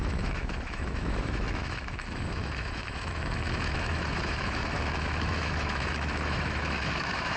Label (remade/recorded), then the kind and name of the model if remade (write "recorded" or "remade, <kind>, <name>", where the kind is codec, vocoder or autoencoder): remade, autoencoder, DAC-VAE